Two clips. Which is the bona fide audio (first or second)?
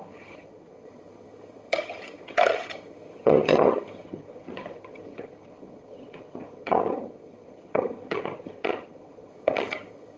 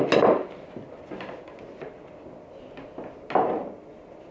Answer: second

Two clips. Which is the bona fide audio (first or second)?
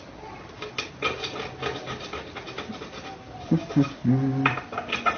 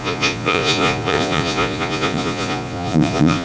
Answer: first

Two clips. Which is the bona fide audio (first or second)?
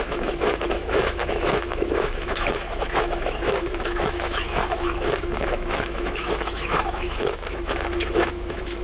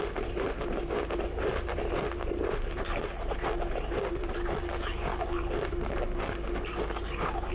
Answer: second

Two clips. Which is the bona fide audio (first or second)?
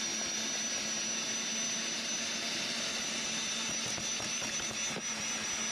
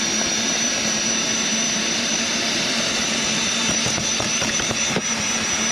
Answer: first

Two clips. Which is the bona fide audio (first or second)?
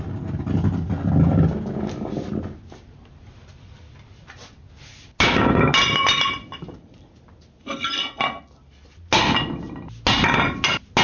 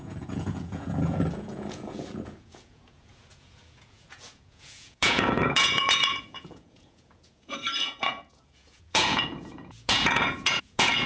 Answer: first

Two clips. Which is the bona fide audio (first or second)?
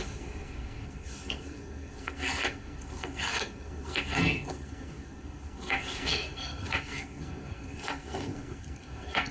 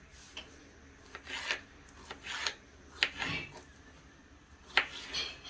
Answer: second